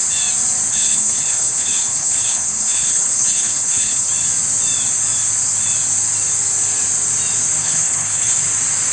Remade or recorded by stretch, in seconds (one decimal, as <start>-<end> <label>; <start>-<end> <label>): 0.0-0.7 recorded; 0.7-4.1 remade; 4.1-7.6 recorded; 7.6-8.4 remade; 8.4-8.9 recorded

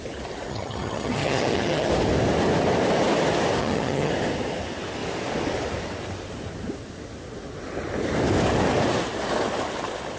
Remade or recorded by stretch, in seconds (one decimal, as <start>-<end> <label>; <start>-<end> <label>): 0.0-0.5 recorded; 0.5-1.9 remade; 1.9-3.6 recorded; 3.6-4.1 remade; 4.1-10.2 recorded

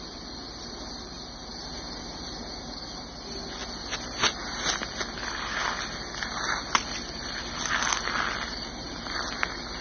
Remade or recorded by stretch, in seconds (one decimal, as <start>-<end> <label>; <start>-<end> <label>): 0.0-9.8 recorded

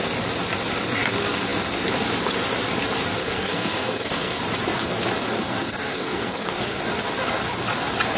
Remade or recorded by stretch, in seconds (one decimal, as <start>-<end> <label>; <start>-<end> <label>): 0.0-3.2 recorded; 3.2-4.4 remade; 4.4-5.3 recorded; 5.3-6.8 remade; 6.8-8.2 recorded